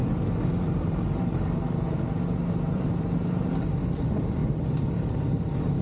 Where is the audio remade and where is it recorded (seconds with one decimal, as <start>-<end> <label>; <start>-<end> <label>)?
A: 0.0-3.5 remade; 3.5-5.8 recorded